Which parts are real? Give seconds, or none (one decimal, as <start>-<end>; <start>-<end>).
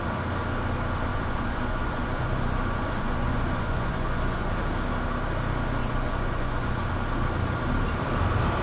0.0-1.1; 4.5-5.8; 6.9-8.6